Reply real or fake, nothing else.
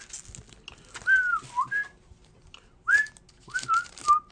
real